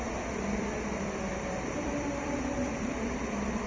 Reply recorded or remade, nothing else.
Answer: remade